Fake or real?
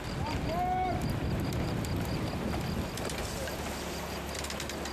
real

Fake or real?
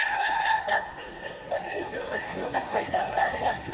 fake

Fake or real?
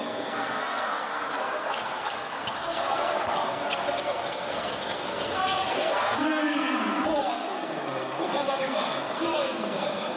fake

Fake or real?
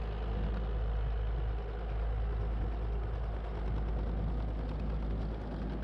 real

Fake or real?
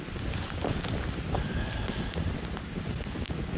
real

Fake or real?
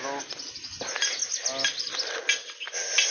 real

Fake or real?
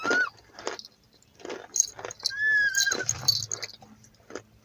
real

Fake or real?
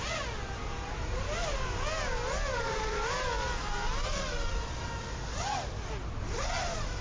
real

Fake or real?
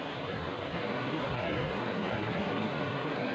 fake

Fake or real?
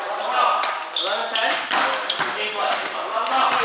real